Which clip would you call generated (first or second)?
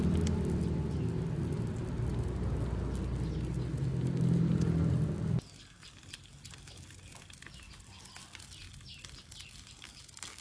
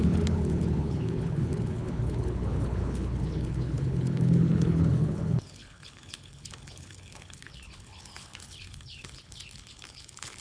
second